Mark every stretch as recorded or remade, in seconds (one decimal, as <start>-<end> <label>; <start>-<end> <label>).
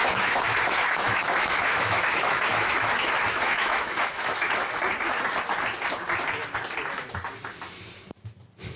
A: 0.0-4.8 remade; 4.8-8.8 recorded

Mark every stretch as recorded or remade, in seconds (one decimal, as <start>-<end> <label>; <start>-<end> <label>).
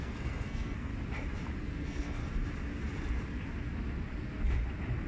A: 0.0-0.9 remade; 0.9-1.6 recorded; 1.6-2.2 remade; 2.2-5.1 recorded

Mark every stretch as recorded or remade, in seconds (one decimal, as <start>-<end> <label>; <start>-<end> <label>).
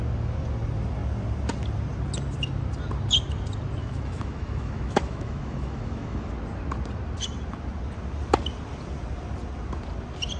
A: 0.0-3.8 recorded; 3.8-6.3 remade; 6.3-10.4 recorded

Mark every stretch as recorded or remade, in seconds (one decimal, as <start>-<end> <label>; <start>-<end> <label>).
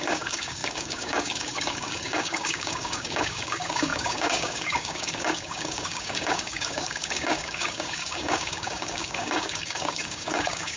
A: 0.0-10.8 remade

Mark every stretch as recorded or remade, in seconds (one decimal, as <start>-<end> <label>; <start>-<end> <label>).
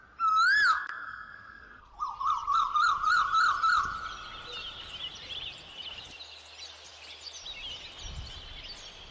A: 0.0-0.7 recorded; 0.7-1.9 remade; 1.9-9.1 recorded